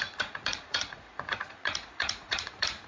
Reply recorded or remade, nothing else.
remade